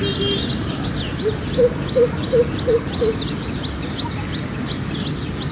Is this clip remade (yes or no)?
no